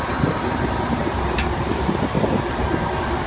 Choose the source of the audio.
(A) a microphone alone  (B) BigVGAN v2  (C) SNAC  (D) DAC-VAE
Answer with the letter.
B